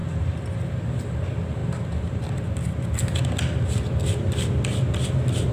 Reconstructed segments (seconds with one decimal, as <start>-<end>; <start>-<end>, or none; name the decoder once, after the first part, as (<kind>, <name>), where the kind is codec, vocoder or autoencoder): 0.0-0.8 (vocoder, BigVGAN v2)